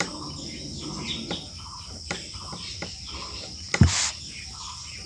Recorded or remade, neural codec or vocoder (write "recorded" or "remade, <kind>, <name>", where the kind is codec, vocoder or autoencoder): remade, vocoder, BigVGAN v2